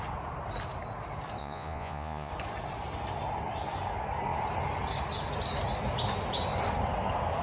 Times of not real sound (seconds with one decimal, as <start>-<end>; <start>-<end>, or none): 1.4-2.3